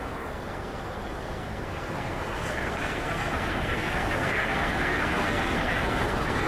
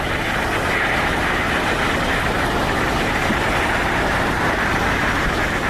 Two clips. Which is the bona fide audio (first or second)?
second